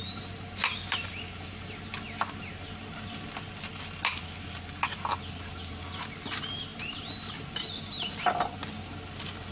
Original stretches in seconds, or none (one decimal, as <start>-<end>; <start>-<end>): 0.0-9.5